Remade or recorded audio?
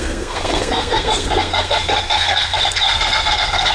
remade